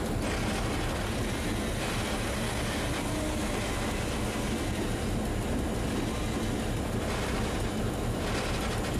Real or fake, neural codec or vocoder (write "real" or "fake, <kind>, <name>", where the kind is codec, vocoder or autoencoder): real